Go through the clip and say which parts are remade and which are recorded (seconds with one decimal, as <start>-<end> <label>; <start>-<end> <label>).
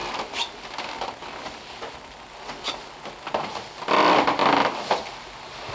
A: 0.0-5.7 recorded